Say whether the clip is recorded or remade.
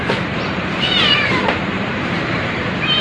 remade